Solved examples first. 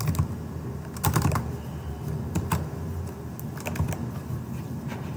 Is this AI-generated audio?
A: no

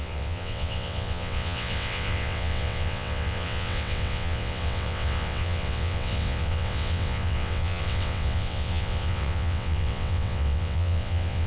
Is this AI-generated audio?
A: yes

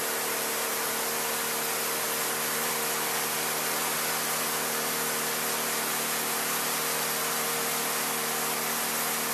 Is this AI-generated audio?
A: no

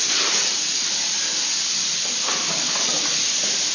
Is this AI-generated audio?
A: no